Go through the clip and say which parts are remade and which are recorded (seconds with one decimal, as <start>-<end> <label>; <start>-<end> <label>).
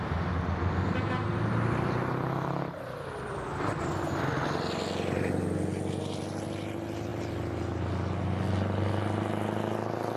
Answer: 0.0-10.2 recorded